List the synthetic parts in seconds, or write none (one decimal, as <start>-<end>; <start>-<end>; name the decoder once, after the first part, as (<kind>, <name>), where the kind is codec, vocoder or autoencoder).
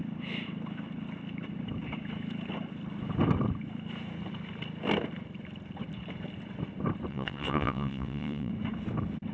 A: 7.1-8.5 (vocoder, WaveNeXt)